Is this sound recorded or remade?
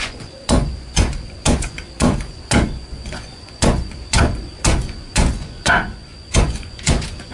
remade